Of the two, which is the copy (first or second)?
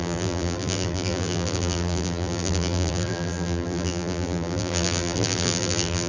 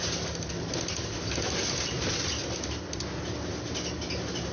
first